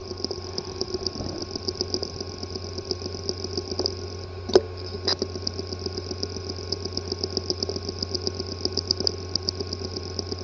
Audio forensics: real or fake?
real